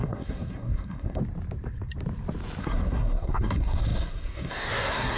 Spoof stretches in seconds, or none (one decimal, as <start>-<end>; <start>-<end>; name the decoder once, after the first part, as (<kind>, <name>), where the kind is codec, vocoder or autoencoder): 0.0-1.2 (codec, SNAC); 2.6-5.2